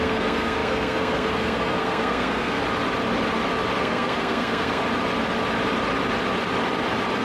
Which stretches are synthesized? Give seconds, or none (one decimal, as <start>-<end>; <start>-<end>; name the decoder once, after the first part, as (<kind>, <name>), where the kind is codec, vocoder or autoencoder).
0.0-2.6 (codec, SNAC); 3.8-4.8